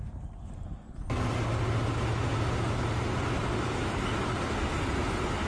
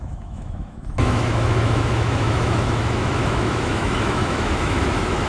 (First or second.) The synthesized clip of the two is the second